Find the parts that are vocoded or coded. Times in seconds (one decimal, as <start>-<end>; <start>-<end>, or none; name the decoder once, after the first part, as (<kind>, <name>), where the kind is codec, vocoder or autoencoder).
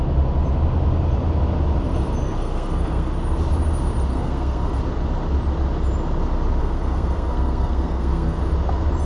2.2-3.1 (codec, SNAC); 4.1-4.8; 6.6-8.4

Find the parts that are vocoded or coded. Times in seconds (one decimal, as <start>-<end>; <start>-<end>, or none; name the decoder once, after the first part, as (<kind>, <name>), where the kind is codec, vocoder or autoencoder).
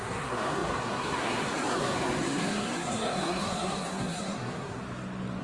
0.0-4.8 (codec, SNAC)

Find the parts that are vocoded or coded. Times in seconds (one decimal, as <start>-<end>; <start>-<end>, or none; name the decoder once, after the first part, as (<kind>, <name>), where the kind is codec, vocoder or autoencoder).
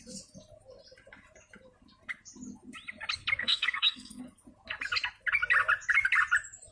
3.4-4.2 (codec, SNAC)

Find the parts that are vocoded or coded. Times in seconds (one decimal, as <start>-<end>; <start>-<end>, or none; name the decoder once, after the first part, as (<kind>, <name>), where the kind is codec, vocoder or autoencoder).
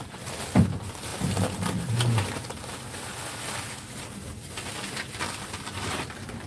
none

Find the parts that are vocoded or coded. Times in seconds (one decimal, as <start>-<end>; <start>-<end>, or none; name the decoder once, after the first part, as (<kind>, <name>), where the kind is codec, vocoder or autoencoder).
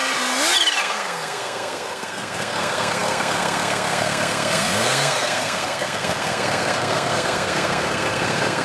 0.8-8.6 (codec, SNAC)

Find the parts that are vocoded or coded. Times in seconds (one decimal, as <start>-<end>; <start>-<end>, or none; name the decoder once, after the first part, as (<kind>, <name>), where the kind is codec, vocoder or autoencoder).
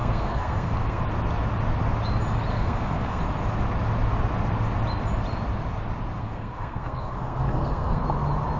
0.0-1.0 (codec, SNAC); 2.5-3.2; 6.2-8.0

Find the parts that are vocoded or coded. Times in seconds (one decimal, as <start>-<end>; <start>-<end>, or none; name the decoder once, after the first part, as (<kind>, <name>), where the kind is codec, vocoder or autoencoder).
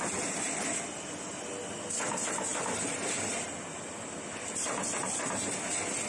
none